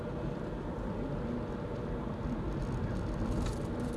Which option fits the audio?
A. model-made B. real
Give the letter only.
B